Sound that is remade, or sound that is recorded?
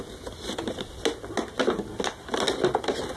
recorded